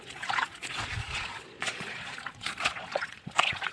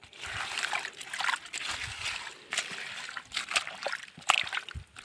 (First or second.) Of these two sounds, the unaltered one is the second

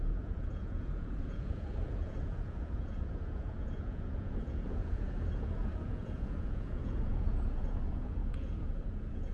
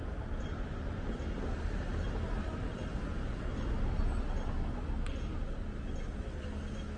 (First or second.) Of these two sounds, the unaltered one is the second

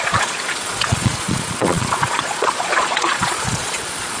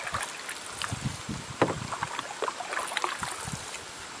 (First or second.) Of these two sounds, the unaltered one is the second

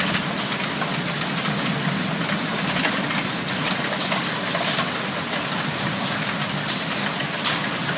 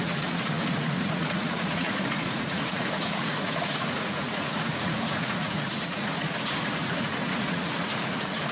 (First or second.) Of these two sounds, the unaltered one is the first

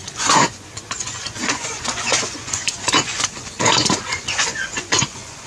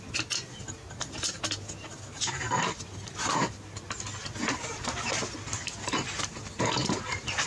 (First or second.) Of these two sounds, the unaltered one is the second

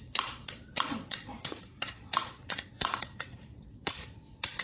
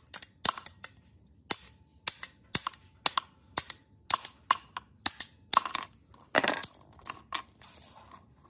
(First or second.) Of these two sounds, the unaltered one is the second